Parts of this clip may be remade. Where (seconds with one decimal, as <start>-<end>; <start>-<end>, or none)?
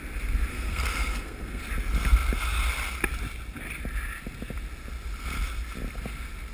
0.5-1.6